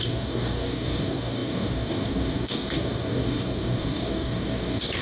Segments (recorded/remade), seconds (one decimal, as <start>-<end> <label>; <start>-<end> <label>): 0.0-5.0 remade